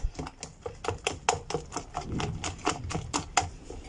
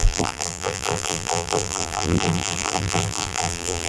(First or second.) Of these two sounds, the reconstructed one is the second